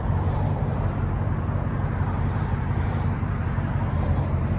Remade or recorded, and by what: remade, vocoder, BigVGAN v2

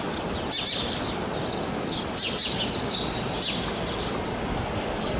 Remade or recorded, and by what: recorded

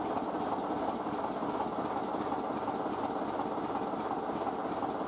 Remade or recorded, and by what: recorded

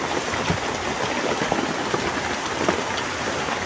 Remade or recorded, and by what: recorded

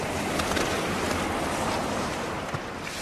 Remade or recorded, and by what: recorded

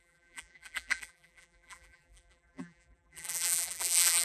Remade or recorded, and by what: remade, vocoder, BigVGAN v2